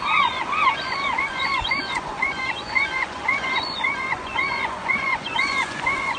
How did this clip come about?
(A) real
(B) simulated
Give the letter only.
B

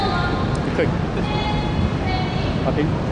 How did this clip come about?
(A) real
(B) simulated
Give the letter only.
A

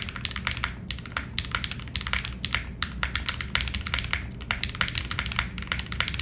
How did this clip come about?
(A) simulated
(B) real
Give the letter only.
B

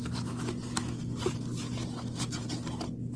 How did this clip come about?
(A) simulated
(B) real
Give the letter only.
B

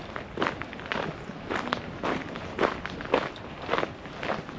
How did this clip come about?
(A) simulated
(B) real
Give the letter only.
B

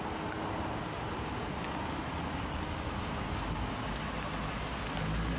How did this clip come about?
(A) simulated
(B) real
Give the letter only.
B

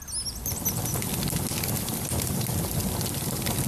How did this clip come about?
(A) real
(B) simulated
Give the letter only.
A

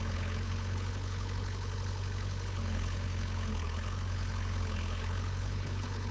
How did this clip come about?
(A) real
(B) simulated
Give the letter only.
B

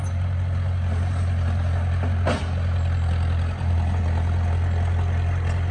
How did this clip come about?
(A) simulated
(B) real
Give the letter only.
B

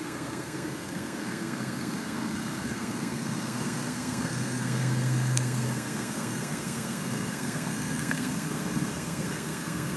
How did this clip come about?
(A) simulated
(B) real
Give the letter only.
A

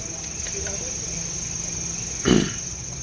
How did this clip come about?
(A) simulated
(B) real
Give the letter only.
B